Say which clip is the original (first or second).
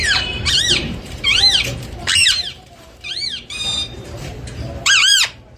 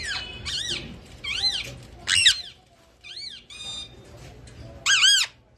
second